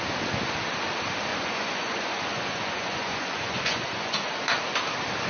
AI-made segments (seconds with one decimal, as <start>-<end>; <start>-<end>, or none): 1.3-4.5